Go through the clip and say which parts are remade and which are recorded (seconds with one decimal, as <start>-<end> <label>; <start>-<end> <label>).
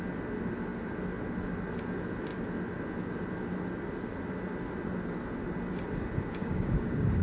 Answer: 0.0-6.4 recorded; 6.4-7.2 remade